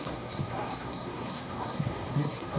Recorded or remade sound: remade